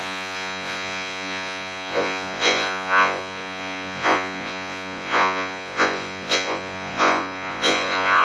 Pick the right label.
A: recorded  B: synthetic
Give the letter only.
B